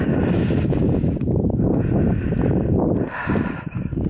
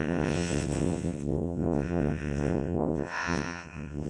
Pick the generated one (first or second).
second